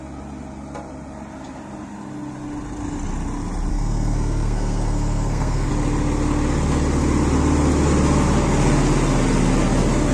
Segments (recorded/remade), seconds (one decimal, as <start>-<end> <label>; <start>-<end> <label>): 0.0-3.7 recorded; 3.7-5.7 remade; 5.7-10.1 recorded